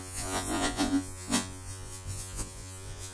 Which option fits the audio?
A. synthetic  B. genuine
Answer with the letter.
A